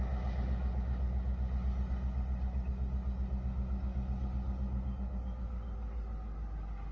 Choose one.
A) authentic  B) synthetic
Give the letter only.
A